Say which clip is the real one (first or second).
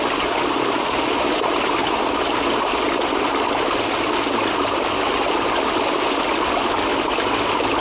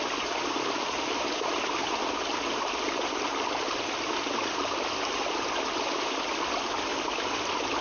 first